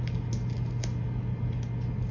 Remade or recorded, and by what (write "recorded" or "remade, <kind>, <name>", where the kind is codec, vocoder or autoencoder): recorded